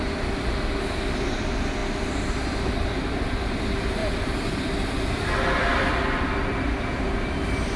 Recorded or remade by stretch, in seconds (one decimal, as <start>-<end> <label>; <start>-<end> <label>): 0.0-1.8 recorded; 1.8-3.6 remade; 3.6-4.0 recorded; 4.0-7.2 remade; 7.2-7.8 recorded